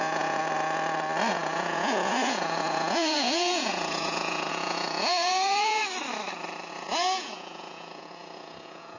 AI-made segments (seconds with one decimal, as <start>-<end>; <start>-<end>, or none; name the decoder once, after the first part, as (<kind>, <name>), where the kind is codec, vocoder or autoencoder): 0.0-0.4 (vocoder, Vocos); 1.3-5.8; 6.7-9.0